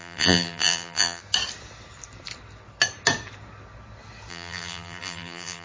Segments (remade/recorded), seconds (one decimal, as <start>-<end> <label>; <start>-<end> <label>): 0.0-1.2 remade; 1.2-4.3 recorded; 4.3-5.6 remade